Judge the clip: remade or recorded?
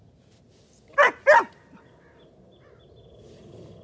recorded